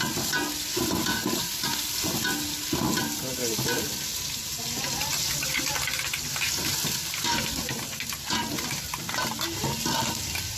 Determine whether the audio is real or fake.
real